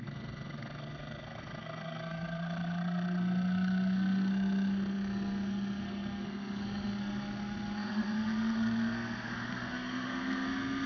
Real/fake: fake